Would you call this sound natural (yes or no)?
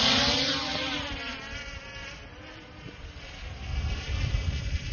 no